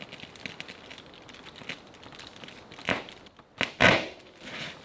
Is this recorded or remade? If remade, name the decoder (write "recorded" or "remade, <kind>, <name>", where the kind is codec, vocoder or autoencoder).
recorded